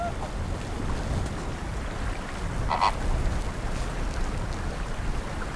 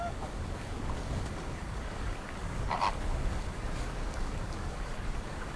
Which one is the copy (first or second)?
second